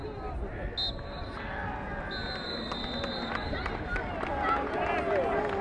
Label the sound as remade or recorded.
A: recorded